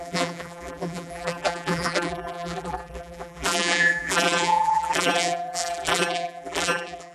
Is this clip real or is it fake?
fake